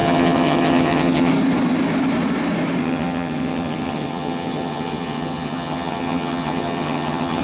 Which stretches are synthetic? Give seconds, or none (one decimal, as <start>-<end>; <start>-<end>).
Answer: 0.0-1.3; 2.8-7.4